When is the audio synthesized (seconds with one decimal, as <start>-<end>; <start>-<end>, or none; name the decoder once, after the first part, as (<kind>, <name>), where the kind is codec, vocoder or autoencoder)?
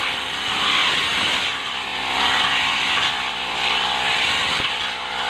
0.0-0.8 (vocoder, BigVGAN v2); 1.5-5.3